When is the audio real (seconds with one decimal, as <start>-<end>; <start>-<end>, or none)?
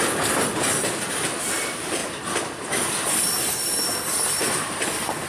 0.0-5.3